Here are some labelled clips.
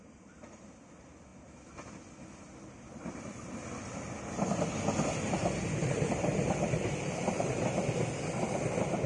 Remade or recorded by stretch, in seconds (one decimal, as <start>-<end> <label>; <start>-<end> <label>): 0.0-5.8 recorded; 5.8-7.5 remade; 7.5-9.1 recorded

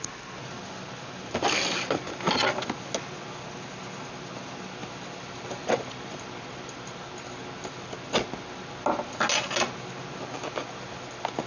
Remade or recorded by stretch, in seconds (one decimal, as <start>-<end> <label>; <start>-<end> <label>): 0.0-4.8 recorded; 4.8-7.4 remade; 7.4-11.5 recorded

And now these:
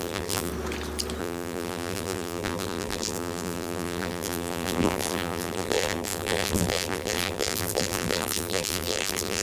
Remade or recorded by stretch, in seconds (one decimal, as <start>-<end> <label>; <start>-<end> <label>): 0.0-0.5 remade; 0.5-1.2 recorded; 1.2-9.4 remade

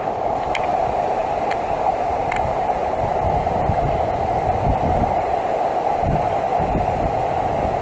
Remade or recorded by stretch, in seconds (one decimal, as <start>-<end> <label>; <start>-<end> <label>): 0.0-0.7 recorded; 0.7-2.8 remade; 2.8-7.8 recorded

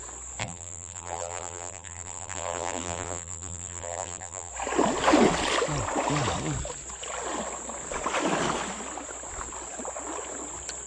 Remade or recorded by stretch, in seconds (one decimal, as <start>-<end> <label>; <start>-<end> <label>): 0.0-0.4 recorded; 0.4-4.5 remade; 4.5-10.9 recorded